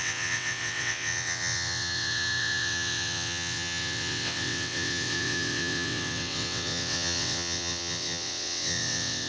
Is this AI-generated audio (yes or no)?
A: yes